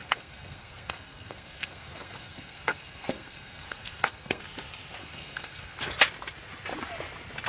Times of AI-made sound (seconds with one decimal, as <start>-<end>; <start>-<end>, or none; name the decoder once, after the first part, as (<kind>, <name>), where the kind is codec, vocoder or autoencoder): 0.0-4.4 (codec, SNAC); 5.0-5.8